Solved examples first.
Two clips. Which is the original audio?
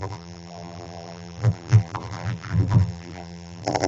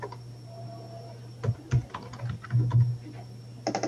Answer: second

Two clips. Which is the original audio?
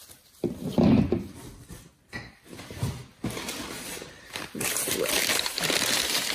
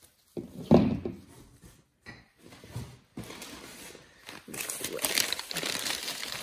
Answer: second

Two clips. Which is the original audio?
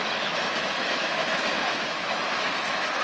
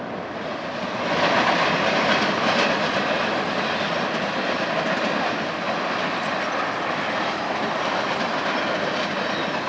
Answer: second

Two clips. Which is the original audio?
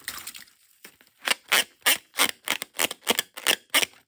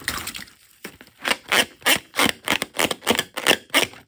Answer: first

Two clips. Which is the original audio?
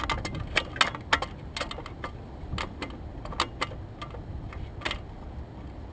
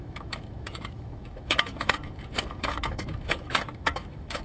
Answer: first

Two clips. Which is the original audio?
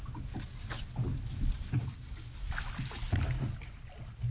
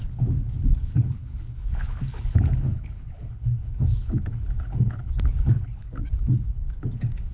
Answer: first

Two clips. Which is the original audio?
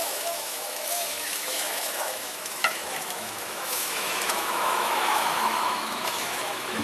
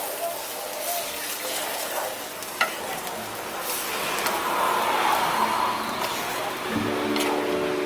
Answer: second